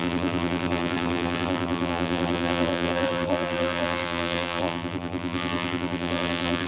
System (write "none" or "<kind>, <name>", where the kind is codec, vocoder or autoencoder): vocoder, BigVGAN v2